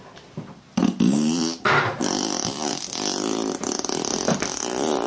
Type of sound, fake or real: real